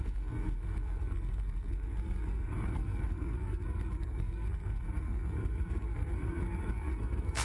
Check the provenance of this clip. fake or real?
fake